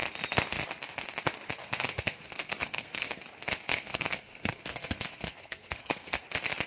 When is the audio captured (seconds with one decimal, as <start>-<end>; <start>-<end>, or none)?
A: 0.0-1.6; 3.2-3.7; 6.2-6.7